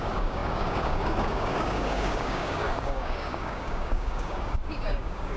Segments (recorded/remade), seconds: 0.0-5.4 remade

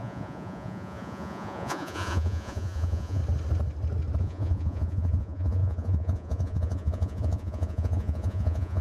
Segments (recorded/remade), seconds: 0.0-3.2 remade; 3.2-4.2 recorded; 4.2-8.8 remade